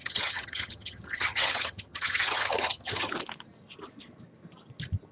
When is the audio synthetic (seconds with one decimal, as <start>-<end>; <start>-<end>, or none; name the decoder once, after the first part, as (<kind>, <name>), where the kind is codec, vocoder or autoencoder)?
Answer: 0.0-3.1 (vocoder, HiFi-GAN)